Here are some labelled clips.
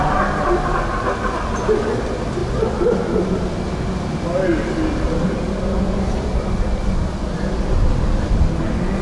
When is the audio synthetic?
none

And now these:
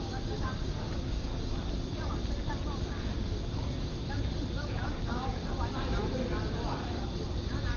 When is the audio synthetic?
0.0-1.3; 4.9-5.4